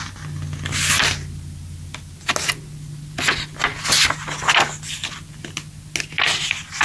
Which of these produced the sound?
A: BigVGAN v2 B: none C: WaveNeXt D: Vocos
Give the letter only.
B